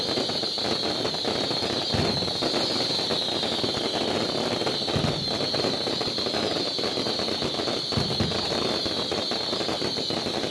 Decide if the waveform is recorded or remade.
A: recorded